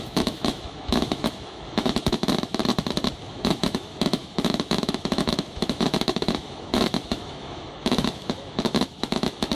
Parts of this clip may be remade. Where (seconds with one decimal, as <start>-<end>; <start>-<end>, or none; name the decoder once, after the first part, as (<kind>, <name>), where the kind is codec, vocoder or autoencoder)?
0.0-2.6 (autoencoder, DAC-VAE); 3.3-9.5